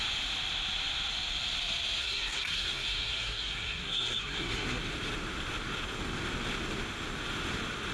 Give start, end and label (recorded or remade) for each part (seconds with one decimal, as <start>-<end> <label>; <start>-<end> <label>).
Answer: 0.0-2.0 recorded; 2.0-4.8 remade; 4.8-7.9 recorded